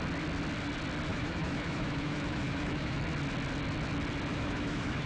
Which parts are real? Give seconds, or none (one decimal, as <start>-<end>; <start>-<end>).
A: 0.0-1.1; 3.0-4.3